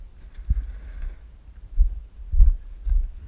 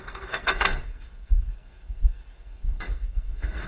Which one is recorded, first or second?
first